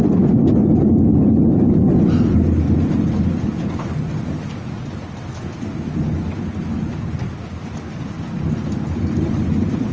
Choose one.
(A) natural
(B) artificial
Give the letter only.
A